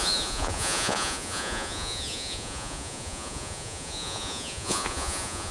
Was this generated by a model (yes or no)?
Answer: yes